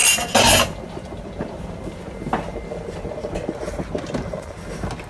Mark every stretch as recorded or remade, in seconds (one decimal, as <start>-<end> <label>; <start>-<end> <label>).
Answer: 0.0-5.1 recorded